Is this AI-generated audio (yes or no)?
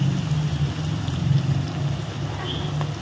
no